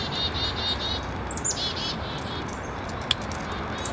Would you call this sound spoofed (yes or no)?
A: no